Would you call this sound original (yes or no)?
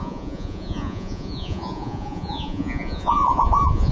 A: no